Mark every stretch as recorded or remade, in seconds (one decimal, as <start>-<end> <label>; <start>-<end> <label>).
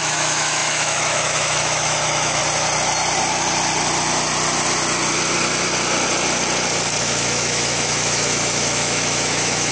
0.0-2.4 remade; 2.4-7.0 recorded; 7.0-9.7 remade